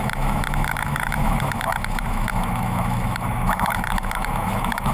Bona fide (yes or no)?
no